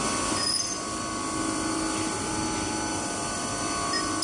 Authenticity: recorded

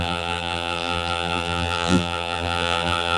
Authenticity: remade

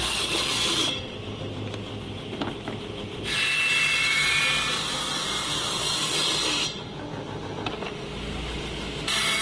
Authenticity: remade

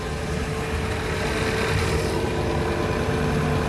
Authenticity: recorded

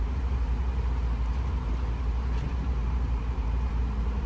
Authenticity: remade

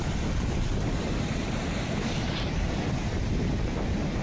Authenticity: remade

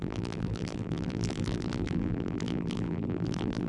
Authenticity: remade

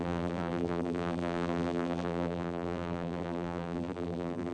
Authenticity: remade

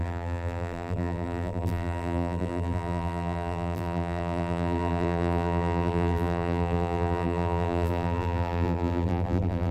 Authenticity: remade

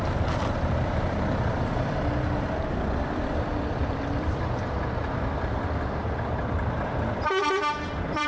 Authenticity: remade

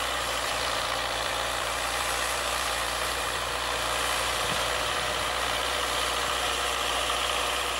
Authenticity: remade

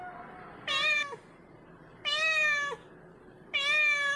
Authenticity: recorded